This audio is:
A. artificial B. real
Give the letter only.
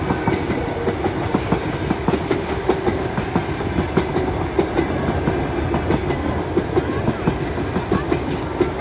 B